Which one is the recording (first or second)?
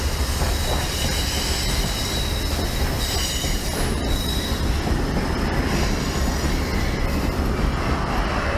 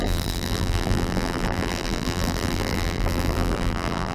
first